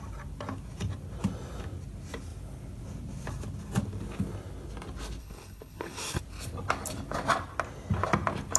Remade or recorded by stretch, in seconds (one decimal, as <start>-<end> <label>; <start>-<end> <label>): 0.0-5.2 recorded; 5.2-6.2 remade; 6.2-8.6 recorded